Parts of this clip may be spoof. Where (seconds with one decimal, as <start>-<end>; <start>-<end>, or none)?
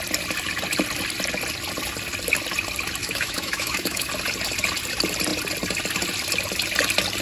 3.0-4.1